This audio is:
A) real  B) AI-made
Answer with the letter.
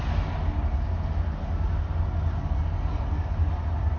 A